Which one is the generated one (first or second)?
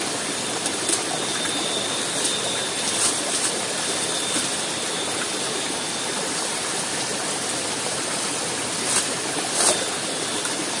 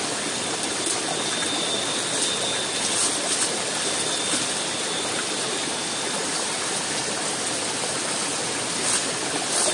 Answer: first